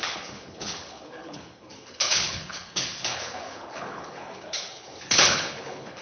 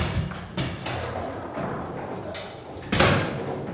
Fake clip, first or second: first